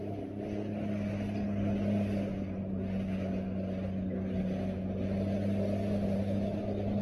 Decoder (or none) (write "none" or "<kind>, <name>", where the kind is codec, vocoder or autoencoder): none